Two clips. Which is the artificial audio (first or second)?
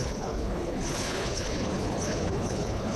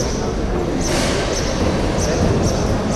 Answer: first